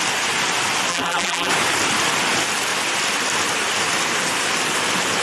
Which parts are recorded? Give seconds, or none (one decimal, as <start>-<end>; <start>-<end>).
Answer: 0.0-0.9; 1.5-5.2